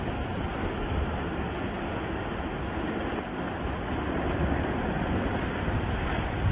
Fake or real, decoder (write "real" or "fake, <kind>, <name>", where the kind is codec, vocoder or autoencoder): real